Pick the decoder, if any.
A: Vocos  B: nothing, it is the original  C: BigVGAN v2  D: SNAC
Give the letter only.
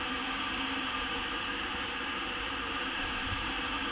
C